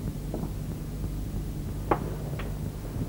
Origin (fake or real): real